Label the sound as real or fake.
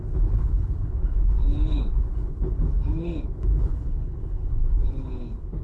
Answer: fake